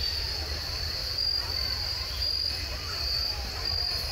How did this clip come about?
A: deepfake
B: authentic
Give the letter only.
B